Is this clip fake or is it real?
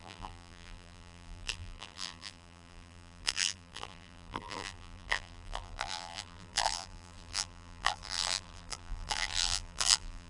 fake